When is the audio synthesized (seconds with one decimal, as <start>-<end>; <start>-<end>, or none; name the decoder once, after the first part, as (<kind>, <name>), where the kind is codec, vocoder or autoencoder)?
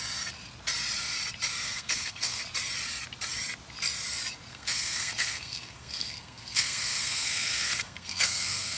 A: 1.5-2.4 (codec, SNAC); 4.5-8.8